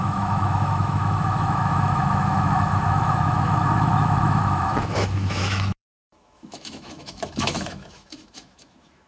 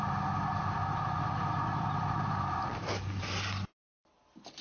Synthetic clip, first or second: first